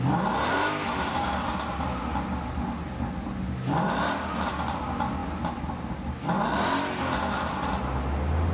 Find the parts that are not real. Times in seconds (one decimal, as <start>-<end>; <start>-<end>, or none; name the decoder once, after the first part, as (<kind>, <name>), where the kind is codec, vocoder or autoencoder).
none